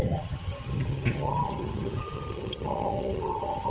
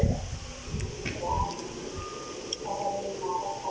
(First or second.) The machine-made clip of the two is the first